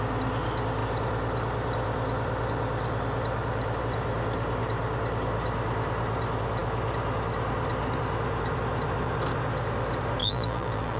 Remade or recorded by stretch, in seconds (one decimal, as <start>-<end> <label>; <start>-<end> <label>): 0.0-10.2 recorded; 10.2-11.0 remade